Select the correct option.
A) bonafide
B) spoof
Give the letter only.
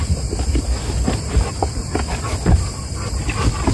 A